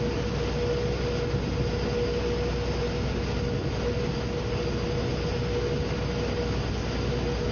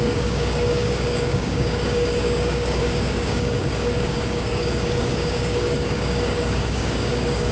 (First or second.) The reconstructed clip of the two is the second